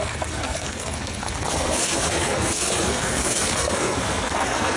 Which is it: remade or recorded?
remade